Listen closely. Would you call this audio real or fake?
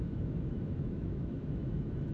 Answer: fake